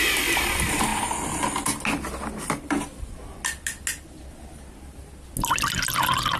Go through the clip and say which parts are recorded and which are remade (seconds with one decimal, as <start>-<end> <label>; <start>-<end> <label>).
0.0-6.4 recorded